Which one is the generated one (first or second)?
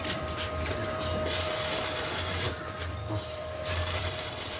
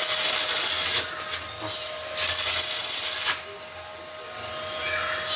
first